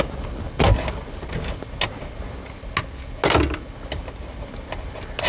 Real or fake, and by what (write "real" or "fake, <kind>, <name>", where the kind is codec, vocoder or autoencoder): real